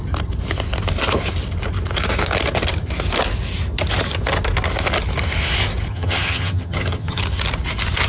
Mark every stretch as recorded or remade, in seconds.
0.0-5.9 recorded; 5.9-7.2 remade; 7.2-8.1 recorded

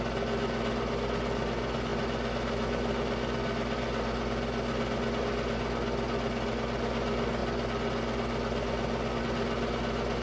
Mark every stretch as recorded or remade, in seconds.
0.0-10.2 recorded

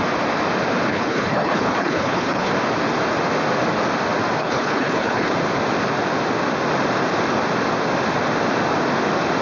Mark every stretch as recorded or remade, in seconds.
0.0-0.9 recorded; 0.9-2.5 remade; 2.5-4.4 recorded; 4.4-5.3 remade; 5.3-9.4 recorded

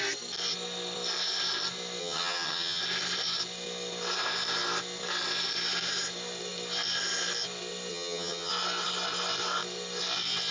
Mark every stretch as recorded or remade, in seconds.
0.0-2.0 recorded; 2.0-2.8 remade; 2.8-7.9 recorded; 7.9-8.5 remade; 8.5-10.5 recorded

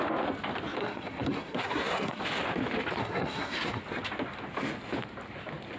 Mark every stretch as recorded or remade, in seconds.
0.0-0.8 recorded; 0.8-2.2 remade; 2.2-3.0 recorded; 3.0-3.8 remade; 3.8-5.8 recorded

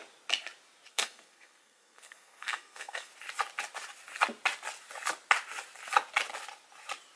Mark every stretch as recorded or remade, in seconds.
0.0-0.9 recorded; 0.9-3.1 remade; 3.1-7.2 recorded